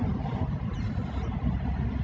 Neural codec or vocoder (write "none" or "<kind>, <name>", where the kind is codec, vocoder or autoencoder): none